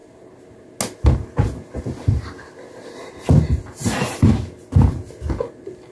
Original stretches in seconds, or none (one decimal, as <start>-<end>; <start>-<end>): 0.0-5.9